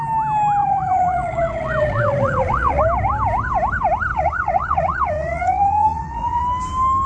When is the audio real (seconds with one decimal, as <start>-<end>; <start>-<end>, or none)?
0.0-0.6; 2.8-4.1; 6.4-7.1